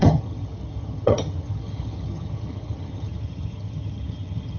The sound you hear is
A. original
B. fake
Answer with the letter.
B